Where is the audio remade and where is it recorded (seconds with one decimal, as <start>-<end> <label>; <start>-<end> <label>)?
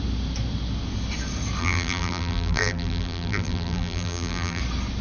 0.0-1.6 recorded; 1.6-4.6 remade; 4.6-5.0 recorded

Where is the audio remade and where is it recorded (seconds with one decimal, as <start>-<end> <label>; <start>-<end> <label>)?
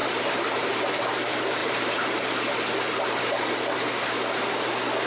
0.0-0.9 remade; 0.9-1.6 recorded; 1.6-2.8 remade; 2.8-5.1 recorded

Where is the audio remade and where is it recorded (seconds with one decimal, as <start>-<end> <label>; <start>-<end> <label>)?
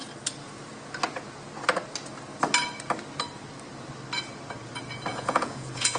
0.0-5.1 recorded; 5.1-6.0 remade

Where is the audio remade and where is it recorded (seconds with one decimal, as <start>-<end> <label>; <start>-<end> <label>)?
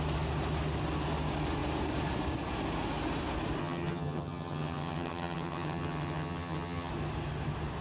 0.0-3.6 recorded; 3.6-6.9 remade; 6.9-7.8 recorded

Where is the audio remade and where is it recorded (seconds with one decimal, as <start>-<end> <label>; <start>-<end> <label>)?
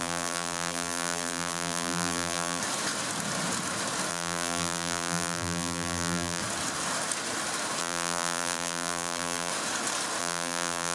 0.0-2.6 remade; 2.6-4.1 recorded; 4.1-6.4 remade; 6.4-7.8 recorded; 7.8-9.5 remade; 9.5-10.2 recorded; 10.2-10.9 remade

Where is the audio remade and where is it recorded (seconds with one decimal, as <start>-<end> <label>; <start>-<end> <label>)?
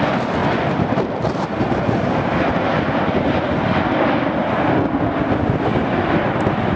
0.0-0.4 recorded; 0.4-4.5 remade; 4.5-5.7 recorded; 5.7-6.3 remade; 6.3-6.8 recorded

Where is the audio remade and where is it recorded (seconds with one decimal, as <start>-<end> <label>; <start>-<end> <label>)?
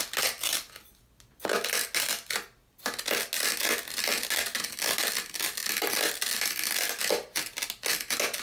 0.0-8.4 recorded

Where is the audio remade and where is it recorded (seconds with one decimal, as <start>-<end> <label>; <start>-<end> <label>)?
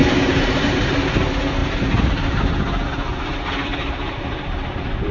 0.0-0.8 remade; 0.8-1.6 recorded; 1.6-2.4 remade; 2.4-3.7 recorded; 3.7-4.2 remade; 4.2-5.1 recorded